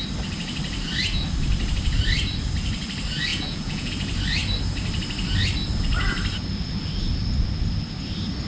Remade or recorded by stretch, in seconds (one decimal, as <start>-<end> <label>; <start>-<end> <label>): 0.0-3.3 recorded; 3.3-3.9 remade; 3.9-8.5 recorded